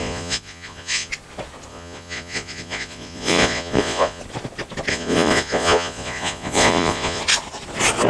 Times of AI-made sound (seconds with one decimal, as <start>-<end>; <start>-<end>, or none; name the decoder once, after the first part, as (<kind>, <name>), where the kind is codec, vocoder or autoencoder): 0.0-1.1 (vocoder, Vocos); 1.7-4.2; 4.9-7.2